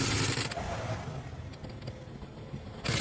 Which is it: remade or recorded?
recorded